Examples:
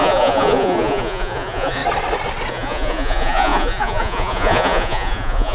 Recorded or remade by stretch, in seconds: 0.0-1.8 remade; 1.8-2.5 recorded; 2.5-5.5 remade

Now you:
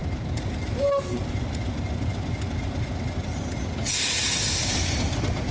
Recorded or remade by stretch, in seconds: 0.0-1.3 remade; 1.3-5.5 recorded

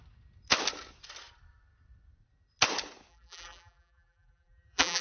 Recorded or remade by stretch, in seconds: 0.0-3.1 recorded; 3.1-5.0 remade

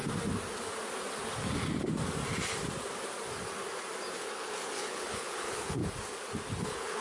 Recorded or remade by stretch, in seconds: 0.0-4.2 recorded; 4.2-5.8 remade; 5.8-6.6 recorded; 6.6-7.0 remade

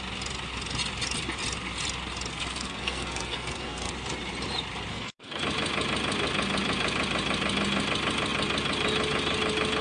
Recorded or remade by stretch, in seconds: 0.0-2.3 recorded; 2.3-3.9 remade; 3.9-4.9 recorded; 4.9-5.4 remade; 5.4-9.8 recorded

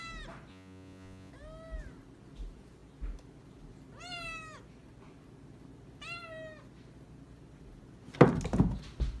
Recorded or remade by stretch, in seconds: 0.0-0.5 recorded; 0.5-1.3 remade; 1.3-9.2 recorded

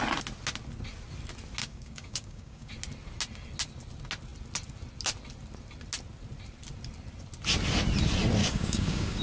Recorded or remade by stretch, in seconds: 0.0-1.6 recorded; 1.6-2.7 remade; 2.7-8.4 recorded; 8.4-9.2 remade

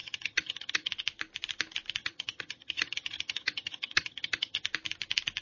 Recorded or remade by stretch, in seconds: 0.0-0.9 remade; 0.9-2.0 recorded; 2.0-4.6 remade; 4.6-5.4 recorded